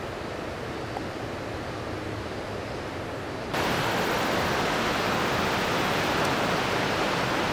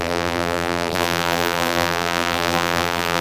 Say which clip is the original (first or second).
first